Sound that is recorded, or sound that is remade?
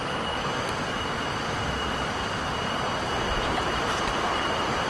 recorded